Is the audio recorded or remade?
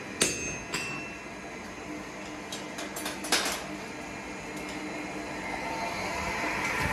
recorded